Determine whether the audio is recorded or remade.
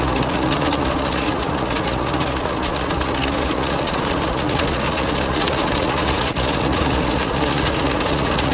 remade